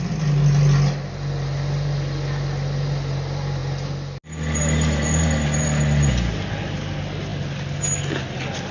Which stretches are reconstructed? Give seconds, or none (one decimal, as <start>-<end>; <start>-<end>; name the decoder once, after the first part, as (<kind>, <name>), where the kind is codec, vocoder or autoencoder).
none